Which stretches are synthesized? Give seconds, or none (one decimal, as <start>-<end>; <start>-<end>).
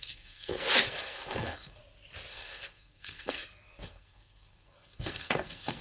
0.0-1.8; 2.3-5.8